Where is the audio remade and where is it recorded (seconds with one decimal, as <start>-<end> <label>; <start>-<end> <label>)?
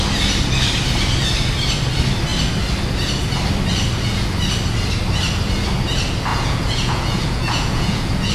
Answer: 0.0-6.3 recorded; 6.3-8.3 remade